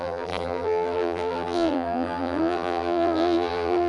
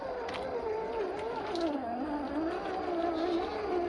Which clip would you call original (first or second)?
second